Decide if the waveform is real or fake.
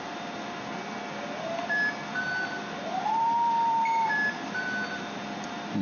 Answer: real